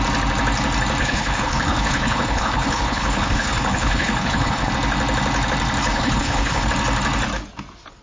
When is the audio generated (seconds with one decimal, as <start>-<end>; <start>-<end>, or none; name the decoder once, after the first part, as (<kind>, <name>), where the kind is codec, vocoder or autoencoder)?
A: 1.0-4.7 (codec, HILCodec); 5.9-6.7